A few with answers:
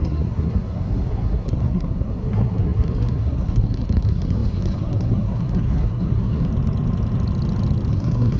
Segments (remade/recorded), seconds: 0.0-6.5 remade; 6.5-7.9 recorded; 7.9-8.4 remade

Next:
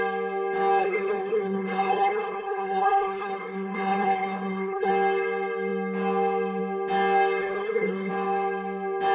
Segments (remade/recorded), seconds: 0.0-0.8 recorded; 0.8-4.9 remade; 4.9-7.4 recorded; 7.4-8.1 remade; 8.1-9.1 recorded

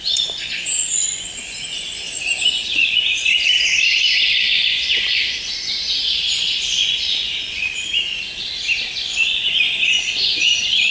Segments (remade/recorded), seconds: 0.0-3.2 remade; 3.2-4.3 recorded; 4.3-7.9 remade; 7.9-8.9 recorded; 8.9-10.9 remade

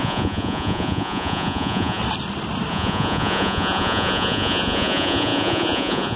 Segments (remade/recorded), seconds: 0.0-2.0 remade; 2.0-2.7 recorded; 2.7-6.2 remade

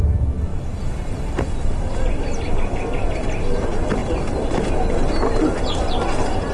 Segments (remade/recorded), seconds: 0.0-6.5 recorded

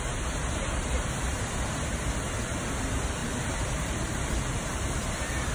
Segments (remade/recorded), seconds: 0.0-3.2 recorded; 3.2-5.1 remade; 5.1-5.5 recorded

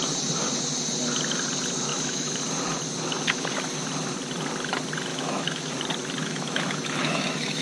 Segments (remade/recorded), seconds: 0.0-1.9 recorded; 1.9-2.4 remade; 2.4-5.1 recorded; 5.1-5.7 remade; 5.7-6.2 recorded; 6.2-7.6 remade

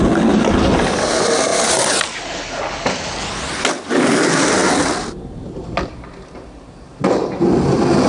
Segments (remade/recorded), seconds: 0.0-8.1 recorded